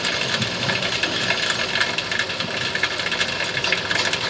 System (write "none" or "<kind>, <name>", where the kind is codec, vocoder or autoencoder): none